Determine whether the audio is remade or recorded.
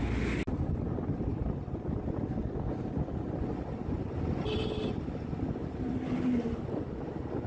recorded